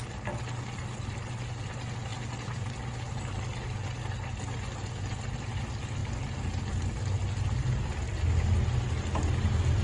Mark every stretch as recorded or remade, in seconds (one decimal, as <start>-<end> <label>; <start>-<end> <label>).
0.0-9.8 recorded